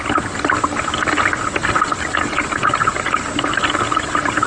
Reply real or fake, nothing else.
real